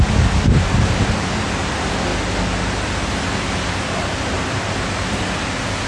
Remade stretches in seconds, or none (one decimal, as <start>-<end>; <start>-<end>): none